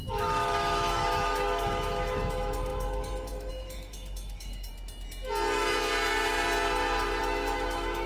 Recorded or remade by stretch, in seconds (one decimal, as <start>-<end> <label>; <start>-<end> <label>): 0.0-4.7 remade; 4.7-7.2 recorded; 7.2-8.1 remade